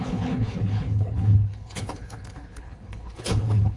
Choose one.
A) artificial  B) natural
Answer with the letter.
A